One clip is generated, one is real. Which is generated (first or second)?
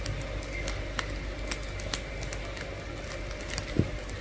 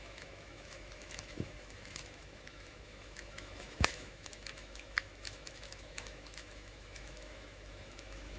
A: second